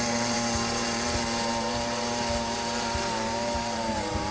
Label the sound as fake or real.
fake